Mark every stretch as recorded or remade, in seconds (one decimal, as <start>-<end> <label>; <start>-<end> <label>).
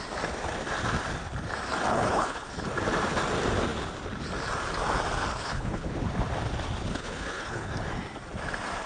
0.0-1.9 recorded; 1.9-2.5 remade; 2.5-5.3 recorded; 5.3-5.9 remade; 5.9-6.9 recorded; 6.9-7.7 remade; 7.7-8.9 recorded